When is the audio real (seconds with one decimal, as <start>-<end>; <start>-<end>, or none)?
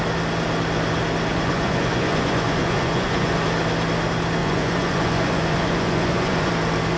0.0-1.3; 3.4-4.4; 6.5-7.0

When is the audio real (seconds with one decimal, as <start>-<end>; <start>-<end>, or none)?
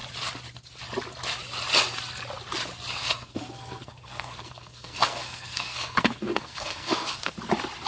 0.0-3.0; 7.3-7.9